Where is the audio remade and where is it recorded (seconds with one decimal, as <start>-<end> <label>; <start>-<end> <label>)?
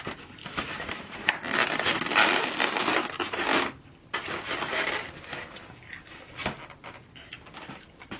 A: 0.0-0.4 recorded; 0.4-1.3 remade; 1.3-8.2 recorded